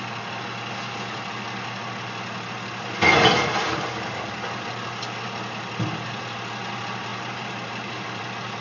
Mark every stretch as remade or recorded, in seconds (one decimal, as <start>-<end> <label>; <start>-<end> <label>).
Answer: 0.0-7.1 recorded; 7.1-8.2 remade; 8.2-8.6 recorded